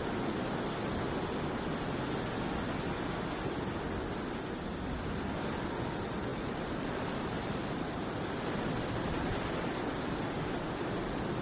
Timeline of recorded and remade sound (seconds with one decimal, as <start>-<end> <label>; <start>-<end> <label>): 0.0-6.3 recorded; 6.3-8.3 remade; 8.3-11.4 recorded